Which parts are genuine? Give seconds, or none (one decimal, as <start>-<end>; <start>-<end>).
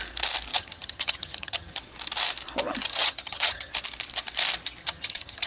0.0-0.5; 1.8-2.8; 3.7-4.8